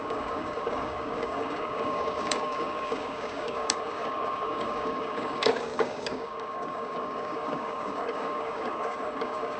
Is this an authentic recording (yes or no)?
no